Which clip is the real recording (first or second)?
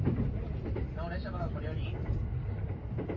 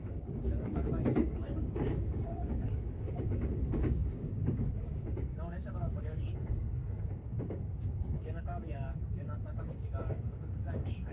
first